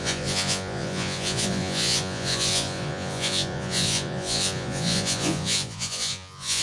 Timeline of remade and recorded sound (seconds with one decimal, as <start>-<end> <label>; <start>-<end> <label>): 0.0-6.6 remade